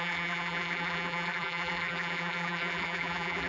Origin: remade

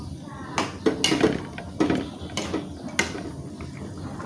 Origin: recorded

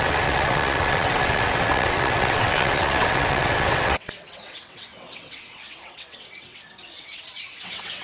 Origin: remade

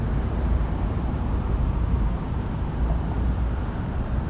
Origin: remade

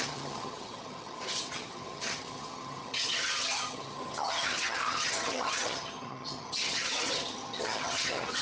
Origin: remade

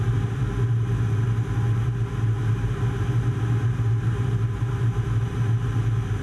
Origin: recorded